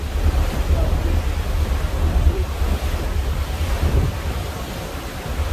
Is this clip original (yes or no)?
yes